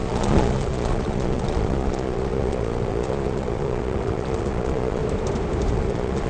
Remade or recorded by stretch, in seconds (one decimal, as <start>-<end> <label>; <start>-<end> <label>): 0.0-5.0 remade; 5.0-5.7 recorded; 5.7-6.3 remade